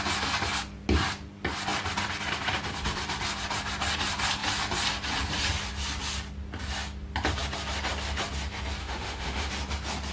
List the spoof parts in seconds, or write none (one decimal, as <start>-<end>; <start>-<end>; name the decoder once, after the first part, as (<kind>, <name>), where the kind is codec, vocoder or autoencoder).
8.8-9.5 (autoencoder, DAC-VAE)